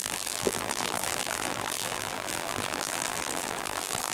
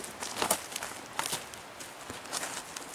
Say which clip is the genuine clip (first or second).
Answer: second